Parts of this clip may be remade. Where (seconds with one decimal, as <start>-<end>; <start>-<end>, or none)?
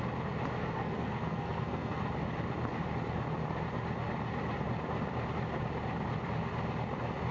0.6-2.0